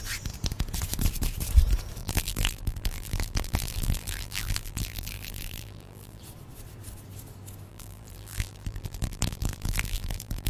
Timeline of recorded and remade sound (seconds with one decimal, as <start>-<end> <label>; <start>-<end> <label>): 0.0-2.0 recorded; 2.0-6.2 remade; 6.2-7.7 recorded; 7.7-10.5 remade